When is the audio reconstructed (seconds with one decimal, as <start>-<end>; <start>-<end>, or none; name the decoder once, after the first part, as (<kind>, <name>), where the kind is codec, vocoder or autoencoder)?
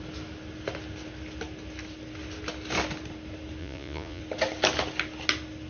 3.6-4.2 (vocoder, Vocos)